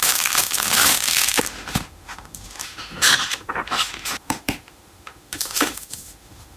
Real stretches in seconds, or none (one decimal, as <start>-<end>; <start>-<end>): none

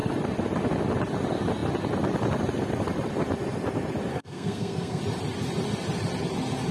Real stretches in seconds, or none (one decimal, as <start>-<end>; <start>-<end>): 0.0-4.1; 5.0-6.7

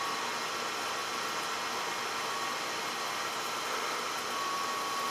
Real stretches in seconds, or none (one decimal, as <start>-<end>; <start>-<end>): 0.0-5.1

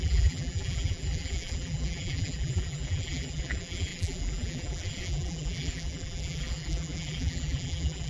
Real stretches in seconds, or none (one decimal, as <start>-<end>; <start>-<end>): none

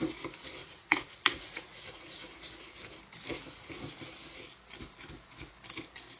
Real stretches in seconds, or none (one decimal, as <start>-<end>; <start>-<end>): 0.0-0.6; 2.3-6.2

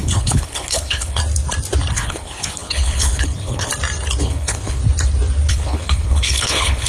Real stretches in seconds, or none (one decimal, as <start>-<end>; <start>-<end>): 1.2-1.9; 3.7-4.2; 4.8-5.5